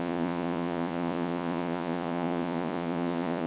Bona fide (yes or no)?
no